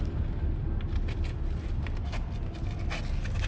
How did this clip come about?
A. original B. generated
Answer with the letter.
A